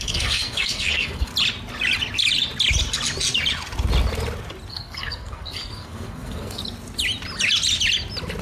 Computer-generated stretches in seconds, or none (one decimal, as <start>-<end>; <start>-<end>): 0.0-1.3; 4.7-6.6

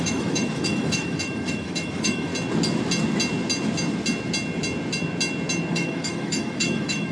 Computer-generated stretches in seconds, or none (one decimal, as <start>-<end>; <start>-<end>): 0.0-2.3; 5.7-7.1

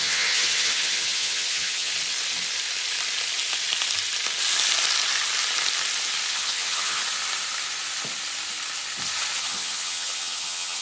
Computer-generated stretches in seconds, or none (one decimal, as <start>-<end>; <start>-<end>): 0.0-1.9; 6.3-7.0; 9.4-10.8

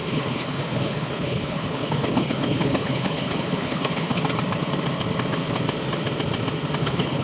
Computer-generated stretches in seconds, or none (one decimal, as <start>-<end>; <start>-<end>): 0.0-4.2; 6.8-7.2

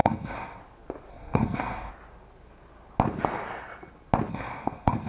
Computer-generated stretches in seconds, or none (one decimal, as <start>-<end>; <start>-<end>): 0.0-0.6; 1.1-1.9; 4.3-5.1

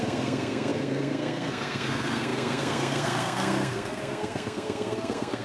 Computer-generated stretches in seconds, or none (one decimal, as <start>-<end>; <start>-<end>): 0.0-5.4

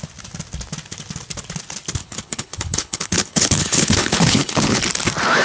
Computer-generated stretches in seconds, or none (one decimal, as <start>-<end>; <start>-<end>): 2.0-4.8